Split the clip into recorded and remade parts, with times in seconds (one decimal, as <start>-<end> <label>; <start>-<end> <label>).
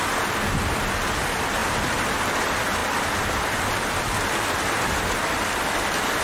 0.0-1.6 recorded; 1.6-2.3 remade; 2.3-6.2 recorded